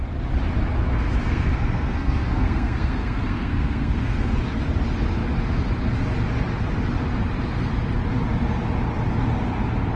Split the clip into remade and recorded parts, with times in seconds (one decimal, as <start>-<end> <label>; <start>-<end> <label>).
0.0-0.8 recorded; 0.8-4.4 remade; 4.4-10.0 recorded